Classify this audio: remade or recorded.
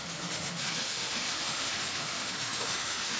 remade